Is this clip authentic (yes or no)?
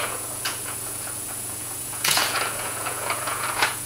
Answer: no